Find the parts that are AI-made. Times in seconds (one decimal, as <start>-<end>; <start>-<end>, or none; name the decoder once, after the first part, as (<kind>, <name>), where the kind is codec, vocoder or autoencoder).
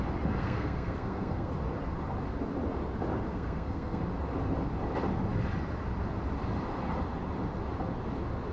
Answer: 0.4-1.5 (codec, SNAC); 3.3-4.0